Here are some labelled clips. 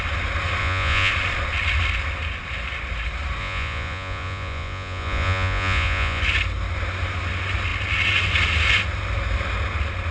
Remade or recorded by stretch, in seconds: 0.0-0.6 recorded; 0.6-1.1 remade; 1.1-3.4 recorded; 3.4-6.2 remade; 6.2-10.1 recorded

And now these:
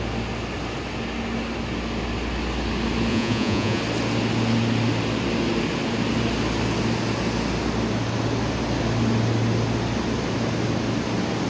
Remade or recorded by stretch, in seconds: 0.0-3.1 recorded; 3.1-3.8 remade; 3.8-11.5 recorded

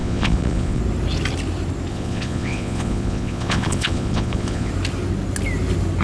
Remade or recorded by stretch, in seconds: 0.0-0.8 remade; 0.8-1.9 recorded; 1.9-4.7 remade; 4.7-6.0 recorded

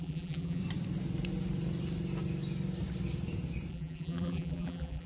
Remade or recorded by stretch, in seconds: 0.0-0.6 remade; 0.6-3.7 recorded; 3.7-5.1 remade